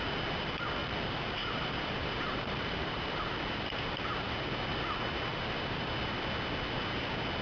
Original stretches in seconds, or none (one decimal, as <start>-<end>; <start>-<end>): 0.0-0.8; 4.3-5.3; 5.9-7.4